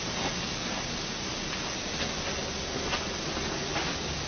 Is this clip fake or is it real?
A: real